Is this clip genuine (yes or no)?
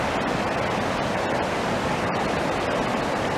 yes